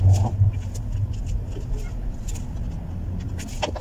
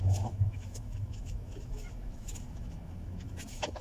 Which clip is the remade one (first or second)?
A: second